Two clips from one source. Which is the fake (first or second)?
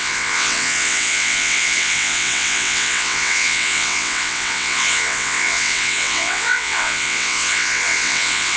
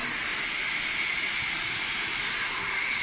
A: first